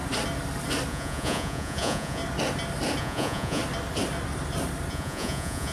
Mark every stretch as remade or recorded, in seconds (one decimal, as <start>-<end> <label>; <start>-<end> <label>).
0.0-0.9 recorded; 0.9-2.2 remade; 2.2-3.0 recorded; 3.0-3.6 remade; 3.6-4.9 recorded; 4.9-5.7 remade